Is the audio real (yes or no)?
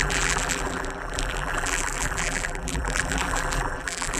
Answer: no